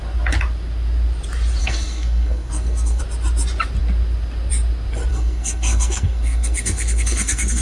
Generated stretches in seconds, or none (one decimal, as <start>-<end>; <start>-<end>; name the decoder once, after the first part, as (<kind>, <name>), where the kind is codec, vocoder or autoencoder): 1.6-3.0 (codec, SNAC); 5.1-7.6